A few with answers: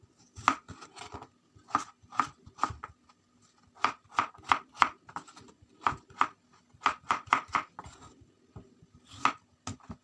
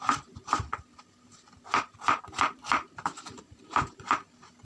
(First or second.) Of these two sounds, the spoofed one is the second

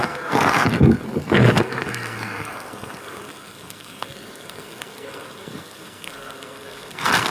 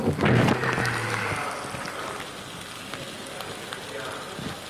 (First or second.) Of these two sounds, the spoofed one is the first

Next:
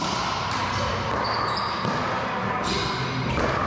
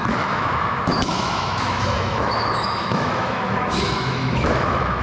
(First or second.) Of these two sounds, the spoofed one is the second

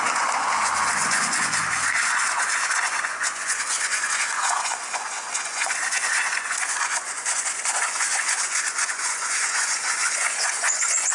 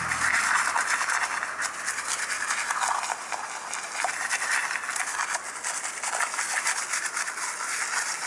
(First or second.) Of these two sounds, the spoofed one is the first